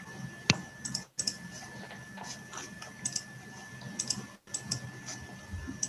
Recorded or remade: recorded